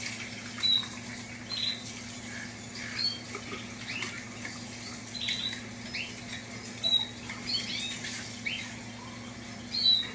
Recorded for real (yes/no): yes